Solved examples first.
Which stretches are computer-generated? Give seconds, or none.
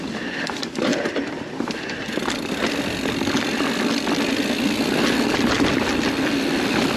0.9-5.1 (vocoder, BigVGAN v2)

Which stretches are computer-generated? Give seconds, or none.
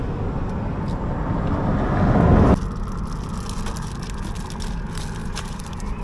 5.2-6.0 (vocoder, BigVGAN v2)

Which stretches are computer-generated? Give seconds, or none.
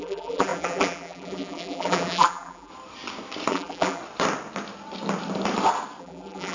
0.0-2.7 (vocoder, BigVGAN v2); 3.5-4.0; 6.0-6.5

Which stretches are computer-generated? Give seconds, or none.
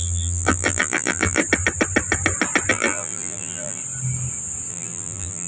0.0-1.4 (vocoder, BigVGAN v2); 2.7-3.8; 4.7-5.5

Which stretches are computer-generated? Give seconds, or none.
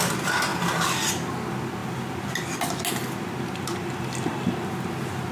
0.5-1.1 (vocoder, BigVGAN v2)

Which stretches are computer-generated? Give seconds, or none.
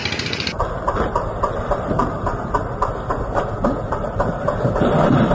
none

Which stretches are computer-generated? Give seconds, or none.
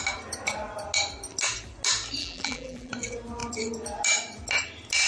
2.2-2.9 (vocoder, BigVGAN v2)